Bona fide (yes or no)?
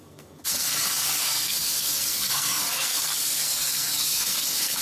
no